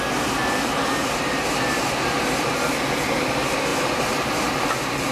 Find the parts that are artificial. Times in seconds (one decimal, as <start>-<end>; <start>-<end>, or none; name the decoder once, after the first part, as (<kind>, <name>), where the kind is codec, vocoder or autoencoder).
none